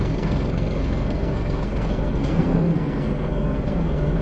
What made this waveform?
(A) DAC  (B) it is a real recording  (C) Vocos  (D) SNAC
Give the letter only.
D